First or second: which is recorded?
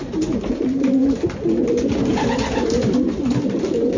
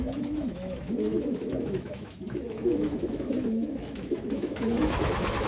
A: first